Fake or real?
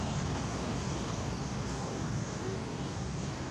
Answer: fake